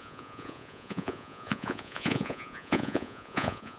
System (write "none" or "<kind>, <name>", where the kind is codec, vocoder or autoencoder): vocoder, Vocos